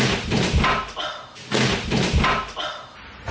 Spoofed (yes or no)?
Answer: no